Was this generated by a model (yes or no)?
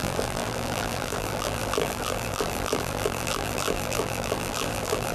yes